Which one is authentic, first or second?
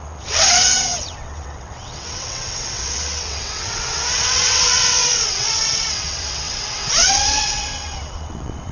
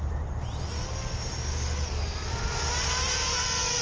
second